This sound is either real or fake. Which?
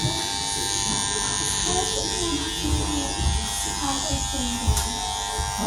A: real